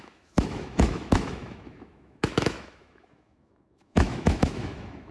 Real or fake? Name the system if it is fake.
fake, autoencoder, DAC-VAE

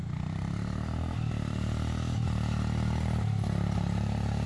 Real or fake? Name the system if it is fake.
real